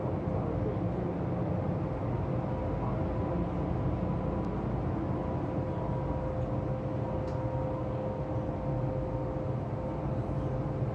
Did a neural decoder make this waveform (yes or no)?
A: no